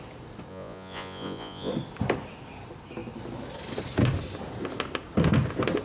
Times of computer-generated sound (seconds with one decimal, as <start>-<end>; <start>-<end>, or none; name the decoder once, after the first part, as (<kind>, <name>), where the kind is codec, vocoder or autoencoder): 0.5-1.7 (vocoder, Vocos)